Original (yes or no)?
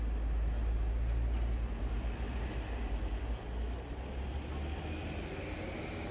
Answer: yes